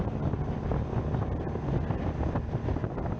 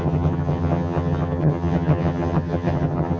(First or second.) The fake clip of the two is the second